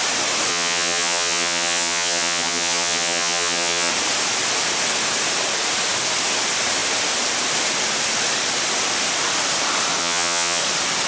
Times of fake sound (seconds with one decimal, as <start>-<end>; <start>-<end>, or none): 0.5-3.9; 10.0-10.6